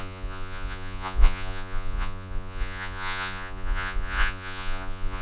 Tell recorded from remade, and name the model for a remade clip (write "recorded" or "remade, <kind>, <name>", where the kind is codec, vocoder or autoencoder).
remade, vocoder, Vocos